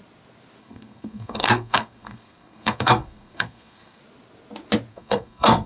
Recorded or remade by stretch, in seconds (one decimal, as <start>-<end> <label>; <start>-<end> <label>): 0.0-0.6 recorded; 0.6-4.0 remade; 4.0-4.9 recorded; 4.9-5.7 remade